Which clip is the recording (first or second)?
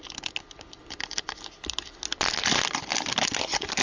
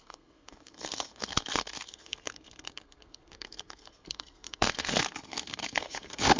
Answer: first